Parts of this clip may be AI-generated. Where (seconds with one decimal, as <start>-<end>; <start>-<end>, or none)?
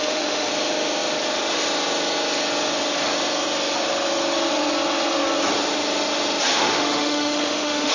0.0-0.5; 6.5-7.9